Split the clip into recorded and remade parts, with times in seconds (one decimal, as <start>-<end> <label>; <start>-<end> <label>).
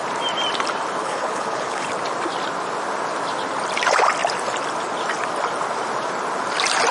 0.0-1.0 recorded; 1.0-1.9 remade; 1.9-6.9 recorded